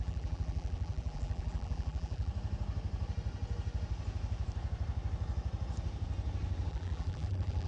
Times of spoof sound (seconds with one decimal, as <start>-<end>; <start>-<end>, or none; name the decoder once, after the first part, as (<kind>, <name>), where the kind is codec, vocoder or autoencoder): 0.0-2.3 (vocoder, BigVGAN v2); 6.7-7.7